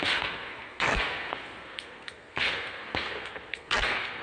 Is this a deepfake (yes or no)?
yes